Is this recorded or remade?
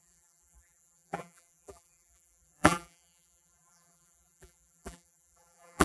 remade